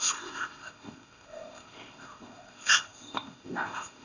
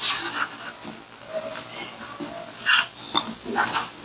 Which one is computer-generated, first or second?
first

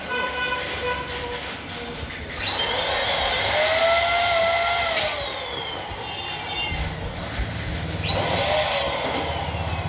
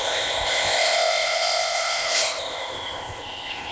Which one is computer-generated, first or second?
second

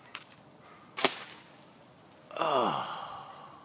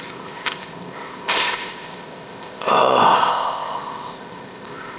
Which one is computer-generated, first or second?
second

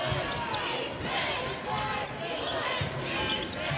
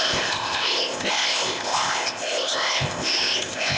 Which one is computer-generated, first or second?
second